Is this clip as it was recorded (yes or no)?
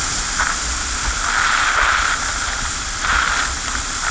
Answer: yes